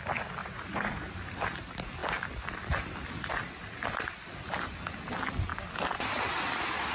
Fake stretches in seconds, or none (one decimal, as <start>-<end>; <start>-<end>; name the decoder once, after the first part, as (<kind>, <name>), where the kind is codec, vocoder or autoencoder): 0.4-1.1 (vocoder, Vocos)